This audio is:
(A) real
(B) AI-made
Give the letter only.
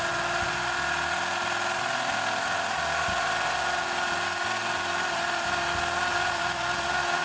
A